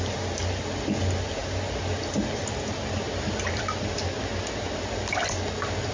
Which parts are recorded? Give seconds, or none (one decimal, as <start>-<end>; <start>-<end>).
0.0-5.9